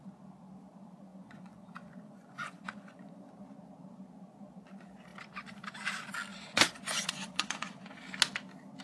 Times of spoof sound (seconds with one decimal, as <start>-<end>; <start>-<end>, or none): 1.1-3.3; 6.3-8.0